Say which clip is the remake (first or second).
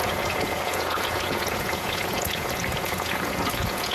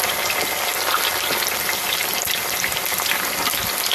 first